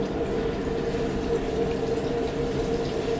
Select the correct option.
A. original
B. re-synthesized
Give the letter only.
A